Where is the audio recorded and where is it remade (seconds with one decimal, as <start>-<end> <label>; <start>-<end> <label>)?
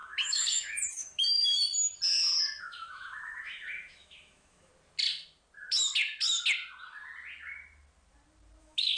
0.0-1.6 remade; 1.6-2.6 recorded; 2.6-4.7 remade; 4.7-8.6 recorded; 8.6-9.0 remade